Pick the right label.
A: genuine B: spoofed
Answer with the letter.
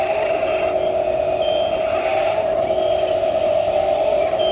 A